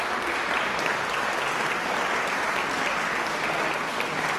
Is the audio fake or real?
real